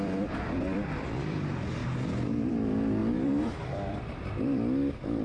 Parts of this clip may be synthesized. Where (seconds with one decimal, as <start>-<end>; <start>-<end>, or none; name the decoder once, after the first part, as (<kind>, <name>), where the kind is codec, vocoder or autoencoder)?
0.0-1.8 (vocoder, BigVGAN v2); 2.5-5.2